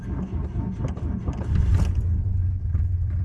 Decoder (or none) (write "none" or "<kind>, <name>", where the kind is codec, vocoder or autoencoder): none